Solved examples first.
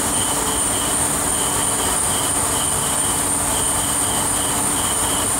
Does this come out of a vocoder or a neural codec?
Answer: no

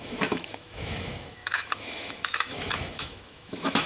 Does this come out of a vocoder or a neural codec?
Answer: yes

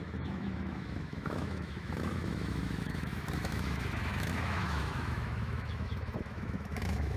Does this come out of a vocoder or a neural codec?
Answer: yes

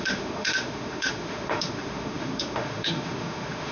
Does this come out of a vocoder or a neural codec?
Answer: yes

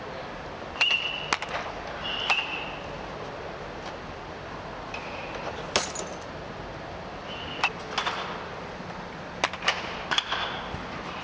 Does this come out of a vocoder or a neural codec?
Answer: no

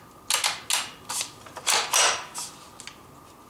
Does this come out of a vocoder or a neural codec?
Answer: no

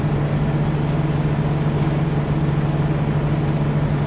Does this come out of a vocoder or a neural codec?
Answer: no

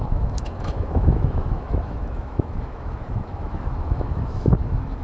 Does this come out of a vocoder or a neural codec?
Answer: yes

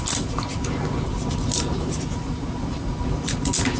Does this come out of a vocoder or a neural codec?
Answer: no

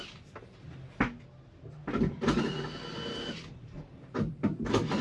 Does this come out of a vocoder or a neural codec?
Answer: no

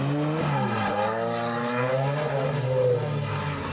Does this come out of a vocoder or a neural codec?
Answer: no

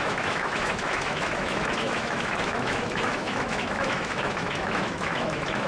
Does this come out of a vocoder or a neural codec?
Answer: yes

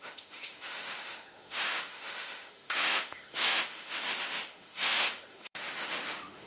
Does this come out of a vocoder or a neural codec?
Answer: yes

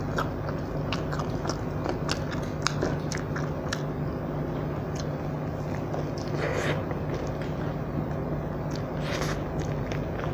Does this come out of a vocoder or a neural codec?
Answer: no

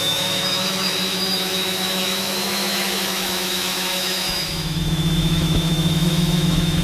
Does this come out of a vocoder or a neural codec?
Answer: yes